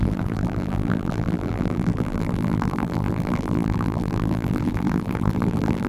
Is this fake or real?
fake